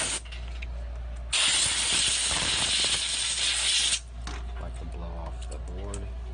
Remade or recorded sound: recorded